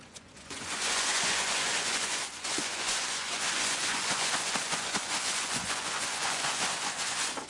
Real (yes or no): no